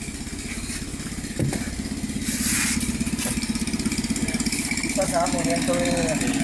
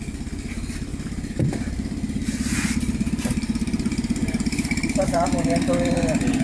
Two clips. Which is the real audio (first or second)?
first